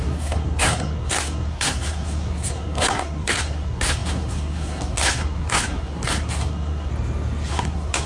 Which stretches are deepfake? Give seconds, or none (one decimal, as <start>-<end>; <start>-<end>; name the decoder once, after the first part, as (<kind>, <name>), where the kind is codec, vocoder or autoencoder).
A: 0.0-6.9 (codec, SNAC); 7.5-8.1